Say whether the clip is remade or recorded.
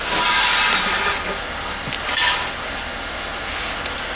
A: recorded